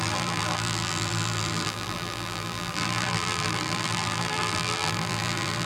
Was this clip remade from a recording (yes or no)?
yes